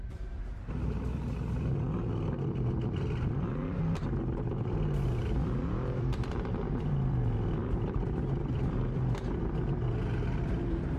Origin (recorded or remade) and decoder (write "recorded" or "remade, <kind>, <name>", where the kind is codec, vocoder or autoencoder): remade, vocoder, BigVGAN v2